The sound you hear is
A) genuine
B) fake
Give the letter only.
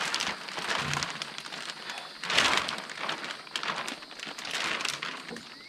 A